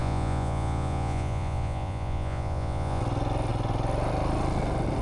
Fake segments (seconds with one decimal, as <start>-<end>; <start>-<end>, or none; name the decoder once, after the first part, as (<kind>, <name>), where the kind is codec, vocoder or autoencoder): 0.0-3.0 (vocoder, Vocos)